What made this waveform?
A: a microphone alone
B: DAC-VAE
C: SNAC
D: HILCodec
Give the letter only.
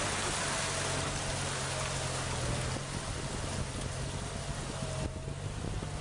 A